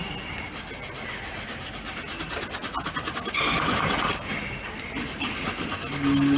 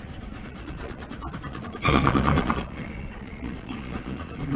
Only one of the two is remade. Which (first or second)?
second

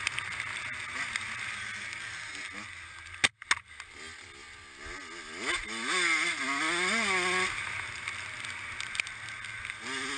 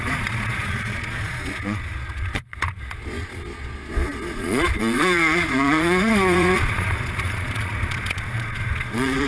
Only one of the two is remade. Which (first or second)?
second